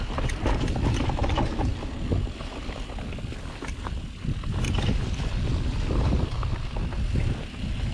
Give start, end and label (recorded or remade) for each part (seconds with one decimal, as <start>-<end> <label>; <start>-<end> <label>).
0.0-7.9 recorded